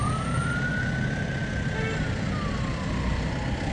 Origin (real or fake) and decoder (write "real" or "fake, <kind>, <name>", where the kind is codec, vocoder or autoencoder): real